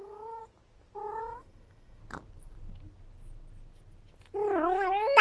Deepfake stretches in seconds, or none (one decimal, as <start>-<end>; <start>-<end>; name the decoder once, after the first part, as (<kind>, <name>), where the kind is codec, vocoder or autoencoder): 0.0-0.4 (autoencoder, DAC-VAE); 1.2-2.0